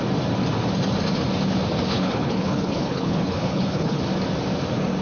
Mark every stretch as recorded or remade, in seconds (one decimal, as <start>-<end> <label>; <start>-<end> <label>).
0.0-1.9 recorded; 1.9-4.0 remade; 4.0-5.0 recorded